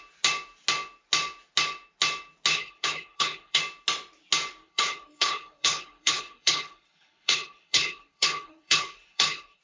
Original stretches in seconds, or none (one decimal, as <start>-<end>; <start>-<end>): 0.0-2.5; 3.6-4.6

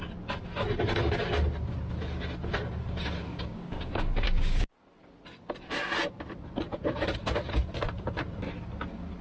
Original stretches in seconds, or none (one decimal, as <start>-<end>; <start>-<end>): 0.0-3.3; 4.7-9.2

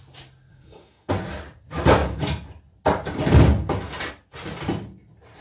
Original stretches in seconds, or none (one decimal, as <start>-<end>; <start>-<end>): 0.0-0.5; 1.1-5.4

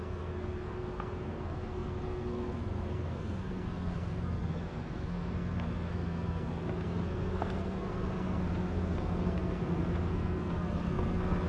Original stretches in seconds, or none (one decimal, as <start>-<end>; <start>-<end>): none

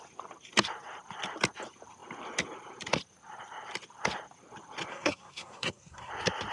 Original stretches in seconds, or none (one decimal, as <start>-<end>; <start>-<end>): 0.0-4.9; 6.1-6.5

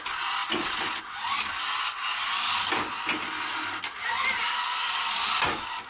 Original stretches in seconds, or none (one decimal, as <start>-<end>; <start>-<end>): 0.0-0.4; 1.0-3.5; 5.1-5.9

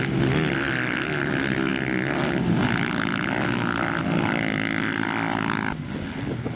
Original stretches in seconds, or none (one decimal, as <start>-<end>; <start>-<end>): 0.0-6.6